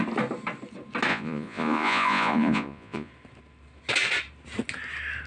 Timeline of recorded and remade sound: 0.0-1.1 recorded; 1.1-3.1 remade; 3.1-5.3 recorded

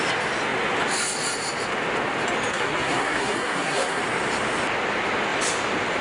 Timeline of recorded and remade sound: 0.0-2.5 recorded; 2.5-4.0 remade; 4.0-6.0 recorded

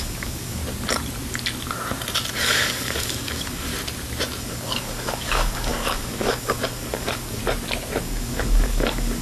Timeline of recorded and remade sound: 0.0-0.6 remade; 0.6-2.3 recorded; 2.3-3.7 remade; 3.7-4.4 recorded; 4.4-7.4 remade; 7.4-8.0 recorded; 8.0-9.2 remade

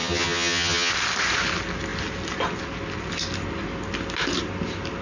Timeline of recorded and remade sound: 0.0-0.9 remade; 0.9-5.0 recorded

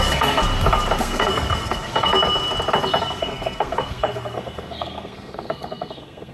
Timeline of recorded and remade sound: 0.0-0.4 remade; 0.4-1.0 recorded; 1.0-2.1 remade; 2.1-3.0 recorded; 3.0-6.3 remade

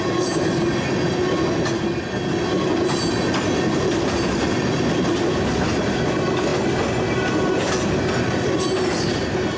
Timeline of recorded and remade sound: 0.0-9.6 recorded